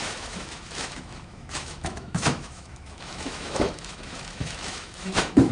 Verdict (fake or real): fake